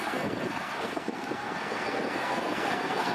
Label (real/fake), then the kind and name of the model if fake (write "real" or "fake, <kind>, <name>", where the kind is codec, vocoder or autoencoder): fake, codec, SNAC